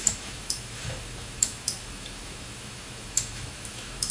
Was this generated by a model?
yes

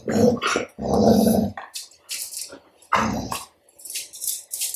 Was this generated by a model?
no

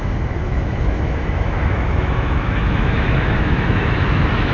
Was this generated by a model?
yes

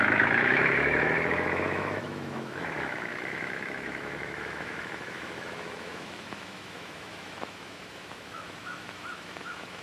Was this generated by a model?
yes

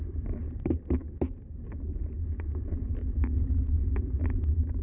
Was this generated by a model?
no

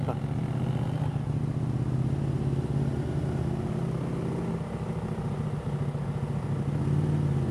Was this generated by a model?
no